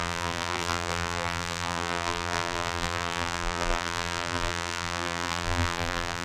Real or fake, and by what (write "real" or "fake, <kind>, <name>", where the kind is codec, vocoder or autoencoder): fake, vocoder, BigVGAN v2